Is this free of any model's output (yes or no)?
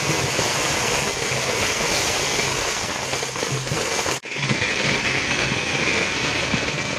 no